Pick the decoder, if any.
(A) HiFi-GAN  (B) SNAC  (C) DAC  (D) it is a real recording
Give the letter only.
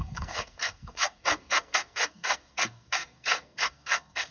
B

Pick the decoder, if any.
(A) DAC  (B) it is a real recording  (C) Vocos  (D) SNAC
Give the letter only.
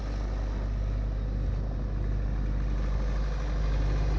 B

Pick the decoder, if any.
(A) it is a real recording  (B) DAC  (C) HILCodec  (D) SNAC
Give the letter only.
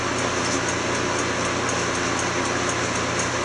A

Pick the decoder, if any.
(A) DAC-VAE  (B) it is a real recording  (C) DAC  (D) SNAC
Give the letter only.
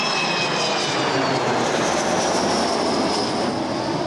B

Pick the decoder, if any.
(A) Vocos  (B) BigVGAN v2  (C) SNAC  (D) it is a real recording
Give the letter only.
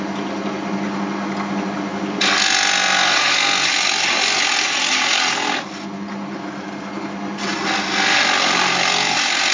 D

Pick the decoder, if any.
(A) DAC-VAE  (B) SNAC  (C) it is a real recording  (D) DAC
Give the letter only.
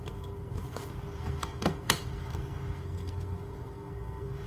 B